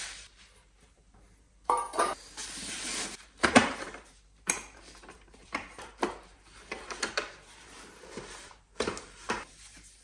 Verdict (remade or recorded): remade